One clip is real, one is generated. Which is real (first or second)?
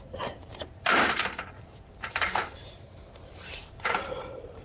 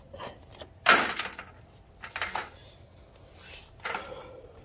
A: second